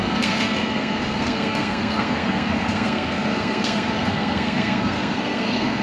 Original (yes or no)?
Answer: no